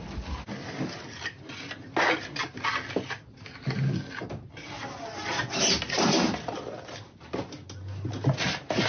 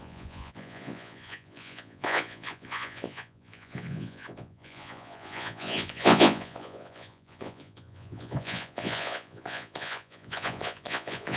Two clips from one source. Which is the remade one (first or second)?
second